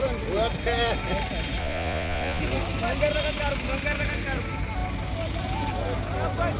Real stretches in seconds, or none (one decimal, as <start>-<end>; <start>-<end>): 0.0-1.6; 2.4-6.6